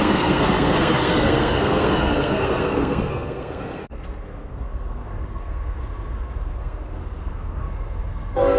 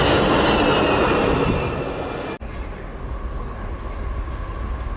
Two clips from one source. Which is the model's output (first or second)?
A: first